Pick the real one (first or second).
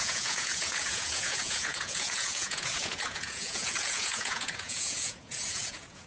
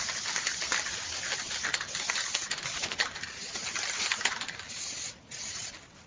second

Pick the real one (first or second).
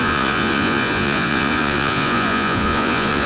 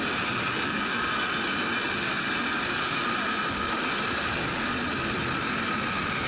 second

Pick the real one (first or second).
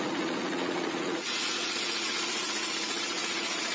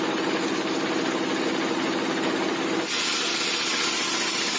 second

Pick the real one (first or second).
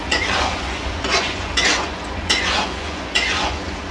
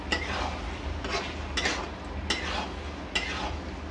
second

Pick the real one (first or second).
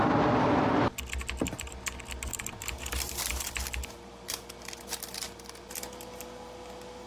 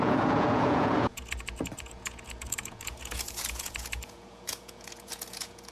first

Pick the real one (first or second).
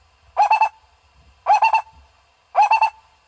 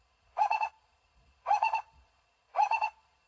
first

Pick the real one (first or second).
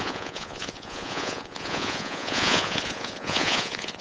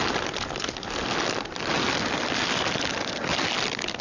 second